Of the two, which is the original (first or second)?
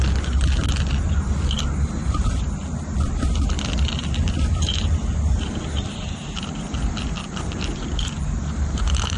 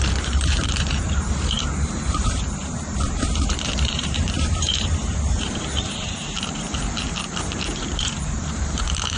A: first